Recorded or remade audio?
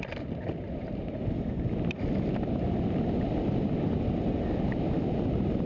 recorded